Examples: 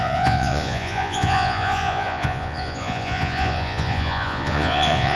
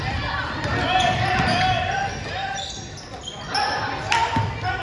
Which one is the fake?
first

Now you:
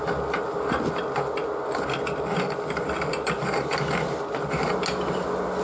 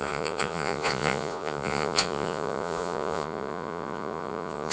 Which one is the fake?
second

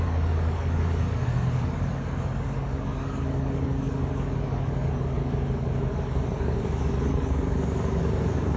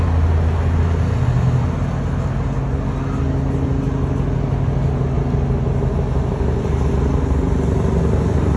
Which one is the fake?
first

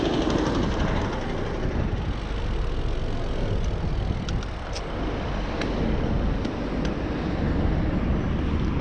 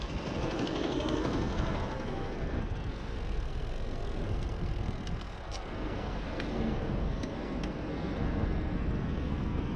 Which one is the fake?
second